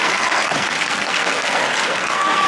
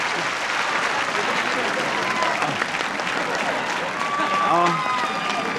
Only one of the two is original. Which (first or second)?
second